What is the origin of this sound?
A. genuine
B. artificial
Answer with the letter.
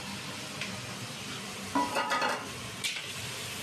B